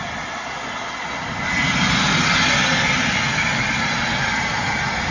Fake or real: real